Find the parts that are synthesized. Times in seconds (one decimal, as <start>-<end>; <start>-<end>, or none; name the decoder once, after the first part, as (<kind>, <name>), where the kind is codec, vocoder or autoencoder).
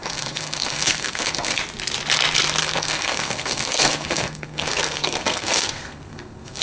0.0-1.6 (codec, SNAC); 2.6-6.6